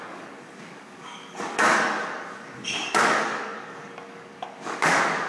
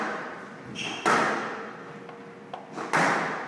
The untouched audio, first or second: second